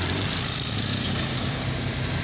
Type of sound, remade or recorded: remade